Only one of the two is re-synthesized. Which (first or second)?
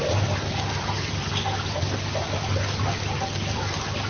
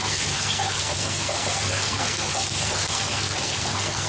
second